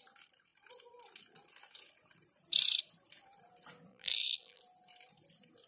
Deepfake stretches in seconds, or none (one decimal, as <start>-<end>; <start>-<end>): 3.9-4.6